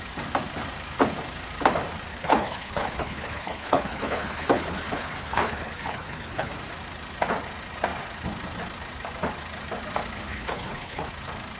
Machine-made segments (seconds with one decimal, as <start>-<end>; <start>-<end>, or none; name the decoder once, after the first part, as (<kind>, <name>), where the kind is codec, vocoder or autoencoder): 2.1-6.5 (codec, HILCodec); 10.3-11.1